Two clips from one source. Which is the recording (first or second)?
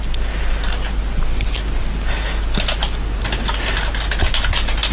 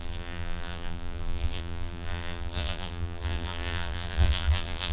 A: first